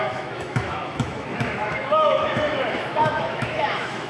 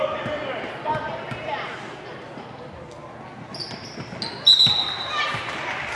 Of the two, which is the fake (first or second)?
first